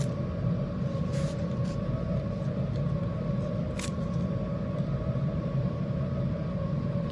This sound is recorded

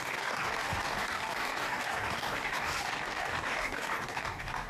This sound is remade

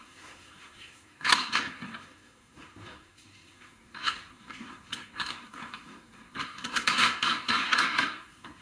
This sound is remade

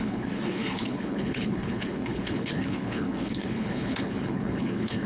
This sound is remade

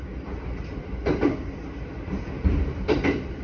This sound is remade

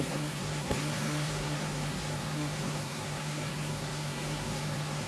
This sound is remade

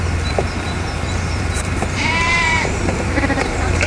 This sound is remade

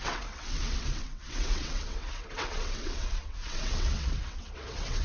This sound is remade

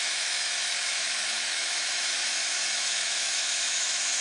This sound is remade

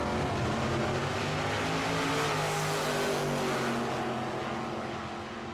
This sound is recorded